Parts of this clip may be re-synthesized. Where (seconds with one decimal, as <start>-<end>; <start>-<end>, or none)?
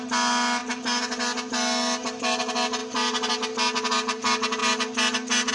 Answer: none